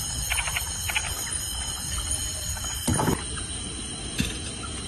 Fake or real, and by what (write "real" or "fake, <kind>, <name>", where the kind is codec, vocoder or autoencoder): real